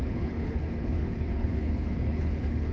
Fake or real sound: fake